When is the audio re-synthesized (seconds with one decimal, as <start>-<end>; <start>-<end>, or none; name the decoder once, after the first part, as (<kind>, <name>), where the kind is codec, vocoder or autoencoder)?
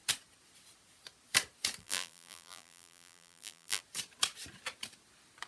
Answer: 1.8-3.8 (vocoder, BigVGAN v2)